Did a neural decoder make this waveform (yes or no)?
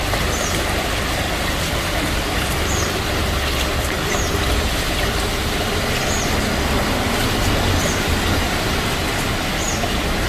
yes